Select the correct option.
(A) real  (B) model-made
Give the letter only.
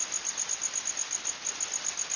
A